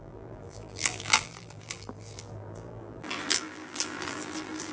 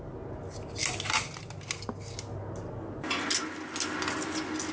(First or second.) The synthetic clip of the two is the first